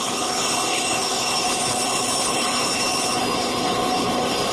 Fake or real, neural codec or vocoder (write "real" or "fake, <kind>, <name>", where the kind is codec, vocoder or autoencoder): fake, codec, HILCodec